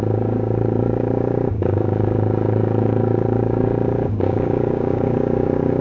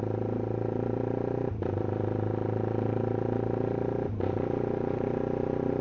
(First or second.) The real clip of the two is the second